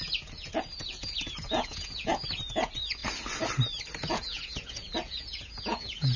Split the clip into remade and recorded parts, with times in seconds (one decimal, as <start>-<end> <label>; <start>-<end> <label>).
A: 0.0-3.0 remade; 3.0-4.1 recorded; 4.1-6.2 remade